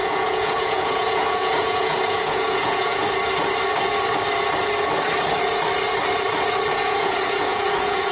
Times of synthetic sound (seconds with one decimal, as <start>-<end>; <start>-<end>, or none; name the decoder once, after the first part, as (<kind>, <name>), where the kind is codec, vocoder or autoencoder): 0.0-3.0 (vocoder, Vocos); 6.7-8.1